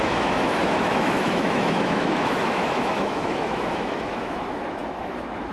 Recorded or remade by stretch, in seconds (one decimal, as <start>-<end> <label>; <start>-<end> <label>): 0.0-5.5 remade